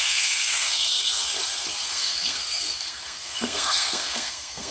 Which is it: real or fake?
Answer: fake